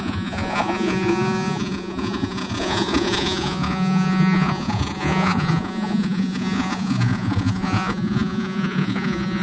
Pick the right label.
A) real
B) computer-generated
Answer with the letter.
B